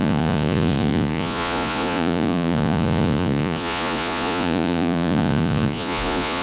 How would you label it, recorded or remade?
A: remade